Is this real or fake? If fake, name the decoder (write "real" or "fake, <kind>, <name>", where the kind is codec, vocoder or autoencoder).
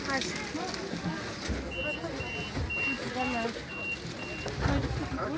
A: real